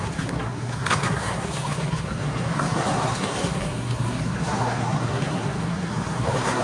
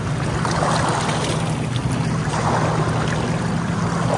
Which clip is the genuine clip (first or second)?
second